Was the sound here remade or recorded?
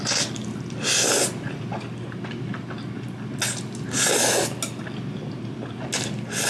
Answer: recorded